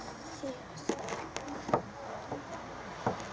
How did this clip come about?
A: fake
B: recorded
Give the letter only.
B